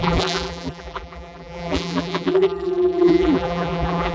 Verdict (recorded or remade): remade